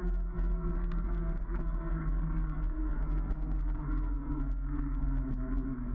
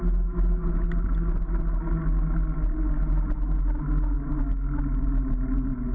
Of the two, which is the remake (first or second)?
first